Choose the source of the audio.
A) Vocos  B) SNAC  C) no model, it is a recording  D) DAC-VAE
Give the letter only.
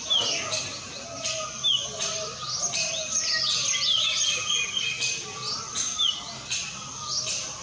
C